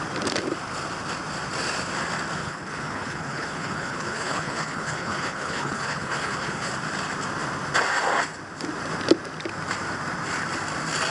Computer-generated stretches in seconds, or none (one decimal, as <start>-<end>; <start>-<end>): 2.4-6.7